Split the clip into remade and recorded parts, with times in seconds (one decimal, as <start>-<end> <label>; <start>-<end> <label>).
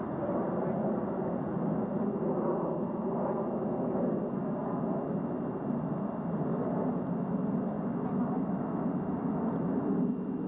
0.0-10.5 recorded